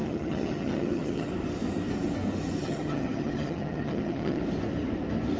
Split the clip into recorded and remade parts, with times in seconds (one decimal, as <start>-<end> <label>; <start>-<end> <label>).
0.0-1.3 remade; 1.3-2.6 recorded; 2.6-4.4 remade; 4.4-5.4 recorded